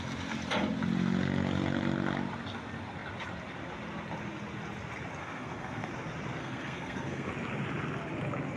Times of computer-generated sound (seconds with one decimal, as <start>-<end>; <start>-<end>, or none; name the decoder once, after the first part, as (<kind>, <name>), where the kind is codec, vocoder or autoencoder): 5.2-5.9 (codec, SNAC); 6.4-7.3